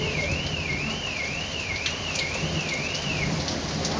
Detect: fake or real real